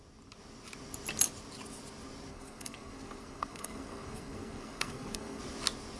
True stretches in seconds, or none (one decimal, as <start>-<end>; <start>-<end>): 0.0-2.3; 5.4-6.0